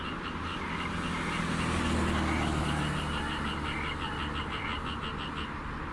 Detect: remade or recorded recorded